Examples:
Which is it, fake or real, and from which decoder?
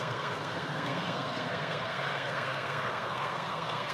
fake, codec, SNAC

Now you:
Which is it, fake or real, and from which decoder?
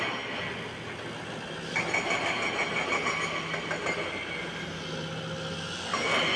real